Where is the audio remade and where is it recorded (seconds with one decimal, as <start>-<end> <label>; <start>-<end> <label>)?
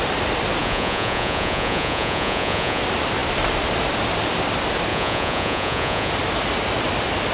0.0-0.6 recorded; 0.6-2.8 remade; 2.8-4.9 recorded; 4.9-6.1 remade; 6.1-7.3 recorded